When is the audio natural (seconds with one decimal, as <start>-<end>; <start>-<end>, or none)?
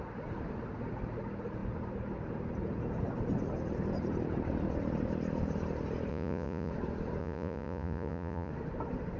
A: 0.0-6.1; 6.7-7.2; 8.5-9.2